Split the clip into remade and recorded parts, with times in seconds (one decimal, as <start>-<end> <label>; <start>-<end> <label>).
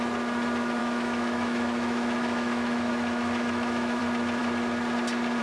0.0-0.8 recorded; 0.8-4.0 remade; 4.0-5.4 recorded